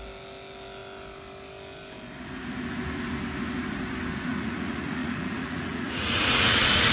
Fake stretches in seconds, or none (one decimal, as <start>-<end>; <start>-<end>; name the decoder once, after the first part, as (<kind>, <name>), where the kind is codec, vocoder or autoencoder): 4.3-6.9 (vocoder, Vocos)